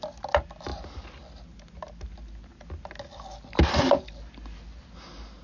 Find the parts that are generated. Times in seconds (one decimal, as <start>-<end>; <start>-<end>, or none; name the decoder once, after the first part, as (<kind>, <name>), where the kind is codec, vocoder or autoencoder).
none